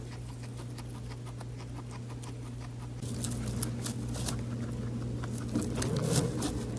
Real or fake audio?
real